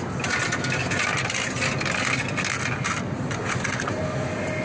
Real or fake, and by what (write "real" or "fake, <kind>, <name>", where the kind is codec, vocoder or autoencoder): real